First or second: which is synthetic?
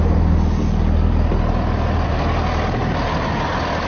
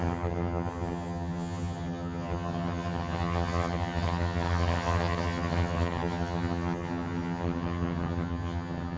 second